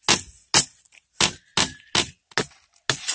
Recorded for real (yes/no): yes